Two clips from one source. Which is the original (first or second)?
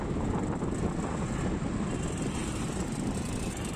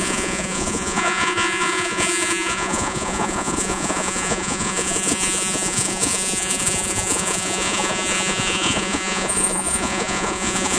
first